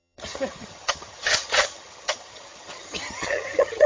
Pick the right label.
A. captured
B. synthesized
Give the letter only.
B